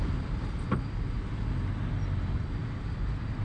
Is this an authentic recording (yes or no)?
yes